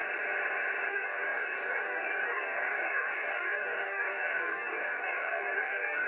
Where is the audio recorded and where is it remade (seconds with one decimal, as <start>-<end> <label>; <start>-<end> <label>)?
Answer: 0.0-0.9 recorded; 0.9-6.1 remade